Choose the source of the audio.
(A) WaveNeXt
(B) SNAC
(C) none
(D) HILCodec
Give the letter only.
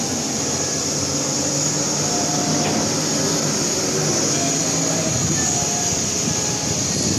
C